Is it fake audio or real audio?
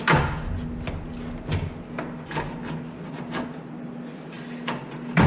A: real